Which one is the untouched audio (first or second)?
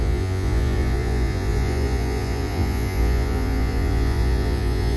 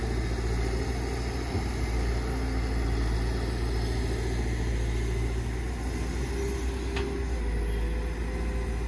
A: second